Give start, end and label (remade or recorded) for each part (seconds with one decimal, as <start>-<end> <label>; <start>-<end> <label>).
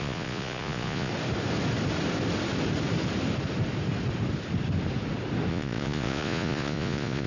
0.0-1.1 remade; 1.1-5.5 recorded; 5.5-7.3 remade